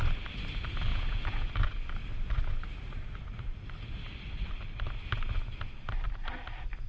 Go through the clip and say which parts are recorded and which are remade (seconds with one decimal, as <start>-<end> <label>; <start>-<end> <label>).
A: 0.0-0.9 recorded; 0.9-1.5 remade; 1.5-6.9 recorded